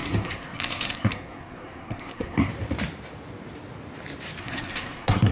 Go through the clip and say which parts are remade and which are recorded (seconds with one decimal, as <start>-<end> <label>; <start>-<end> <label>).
0.0-2.5 remade; 2.5-4.4 recorded; 4.4-5.3 remade